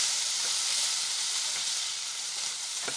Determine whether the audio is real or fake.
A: fake